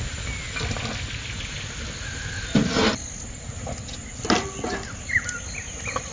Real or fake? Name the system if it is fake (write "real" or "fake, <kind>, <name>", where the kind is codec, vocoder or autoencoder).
real